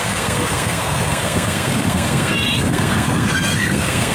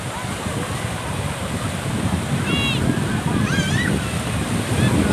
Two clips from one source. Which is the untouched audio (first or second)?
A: second